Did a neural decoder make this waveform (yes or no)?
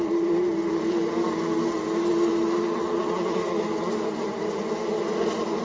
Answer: no